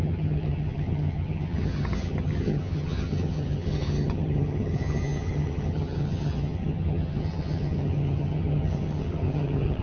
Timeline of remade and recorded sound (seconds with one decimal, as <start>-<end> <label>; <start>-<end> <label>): 0.0-9.8 remade